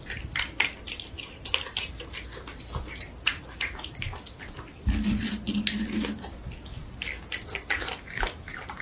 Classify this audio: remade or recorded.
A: recorded